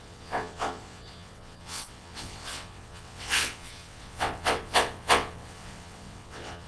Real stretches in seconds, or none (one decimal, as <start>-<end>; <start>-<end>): none